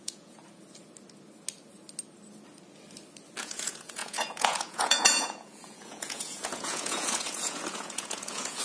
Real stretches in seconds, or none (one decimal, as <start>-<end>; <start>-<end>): 0.4-3.4